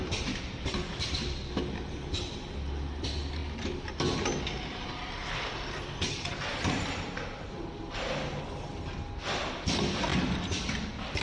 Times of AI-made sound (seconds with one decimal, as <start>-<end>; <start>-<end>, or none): none